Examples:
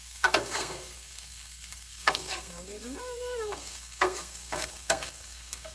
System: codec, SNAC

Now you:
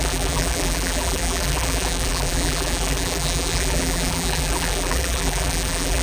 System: vocoder, BigVGAN v2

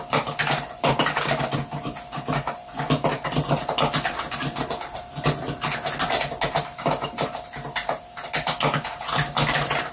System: none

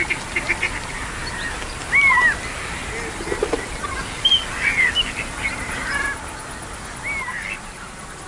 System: none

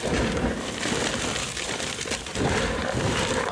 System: vocoder, BigVGAN v2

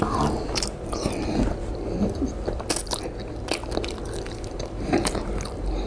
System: none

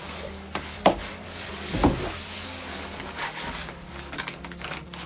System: codec, DAC